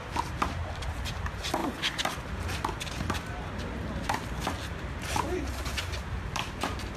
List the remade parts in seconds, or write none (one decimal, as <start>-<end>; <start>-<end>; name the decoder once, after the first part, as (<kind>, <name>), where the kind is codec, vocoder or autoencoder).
none